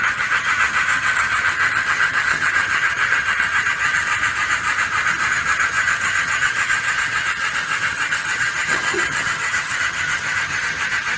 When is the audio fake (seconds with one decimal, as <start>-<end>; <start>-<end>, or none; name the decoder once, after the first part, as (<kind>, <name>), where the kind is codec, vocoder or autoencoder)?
0.0-4.1 (vocoder, HiFi-GAN); 5.3-11.2

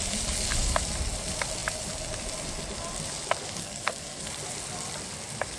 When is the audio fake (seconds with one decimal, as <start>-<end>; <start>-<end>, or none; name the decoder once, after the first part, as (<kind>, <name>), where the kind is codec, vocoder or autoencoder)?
3.6-4.3 (codec, SNAC)

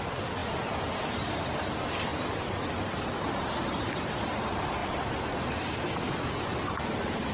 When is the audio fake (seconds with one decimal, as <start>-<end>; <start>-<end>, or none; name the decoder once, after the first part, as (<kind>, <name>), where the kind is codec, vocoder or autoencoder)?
none